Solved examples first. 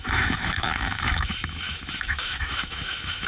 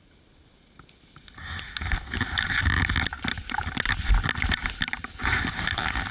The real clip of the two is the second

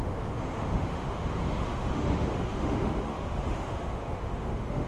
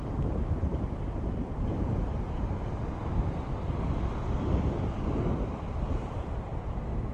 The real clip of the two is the second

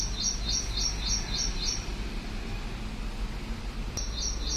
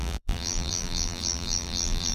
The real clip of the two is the first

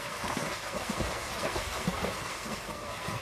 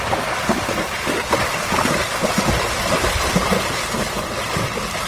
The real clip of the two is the second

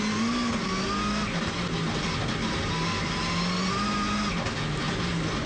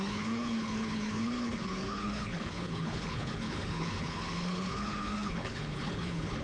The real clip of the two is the first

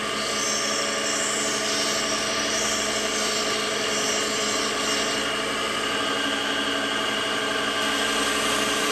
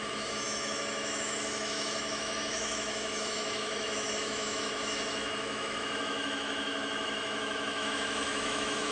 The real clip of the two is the first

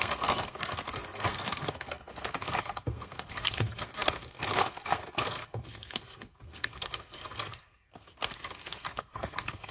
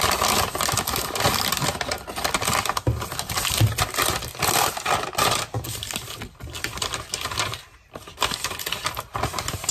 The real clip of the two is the second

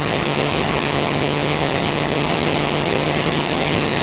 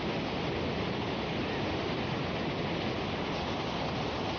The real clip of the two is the second